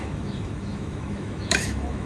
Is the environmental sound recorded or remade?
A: remade